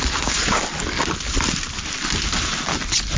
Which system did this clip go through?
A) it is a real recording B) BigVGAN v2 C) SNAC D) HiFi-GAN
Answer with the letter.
A